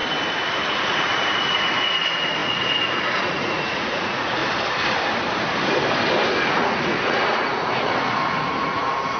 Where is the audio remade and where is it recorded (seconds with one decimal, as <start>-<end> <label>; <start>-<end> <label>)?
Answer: 0.0-0.7 recorded; 0.7-4.4 remade; 4.4-6.5 recorded; 6.5-9.2 remade